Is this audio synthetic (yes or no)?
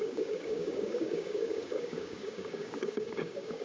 yes